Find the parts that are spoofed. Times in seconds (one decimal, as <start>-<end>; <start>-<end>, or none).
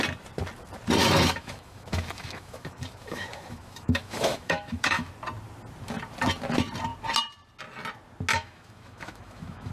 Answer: 1.0-5.1; 8.3-9.7